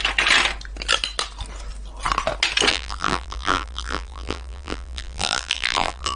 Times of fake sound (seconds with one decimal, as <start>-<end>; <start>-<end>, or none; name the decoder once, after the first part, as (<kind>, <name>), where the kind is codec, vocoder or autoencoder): 2.7-6.2 (vocoder, BigVGAN v2)